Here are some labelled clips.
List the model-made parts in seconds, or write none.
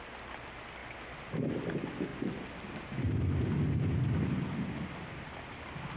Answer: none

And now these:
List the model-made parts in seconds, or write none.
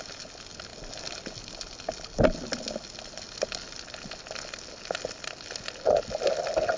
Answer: none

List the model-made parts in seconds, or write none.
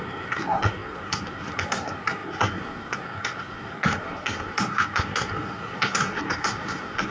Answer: 0.0-7.1 (codec, SNAC)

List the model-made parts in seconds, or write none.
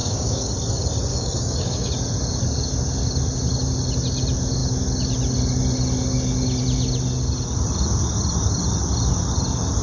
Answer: 0.0-0.5 (codec, DAC); 1.1-1.9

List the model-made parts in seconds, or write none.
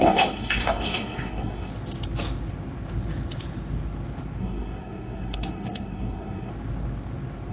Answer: 0.0-1.7 (codec, SNAC); 4.4-6.5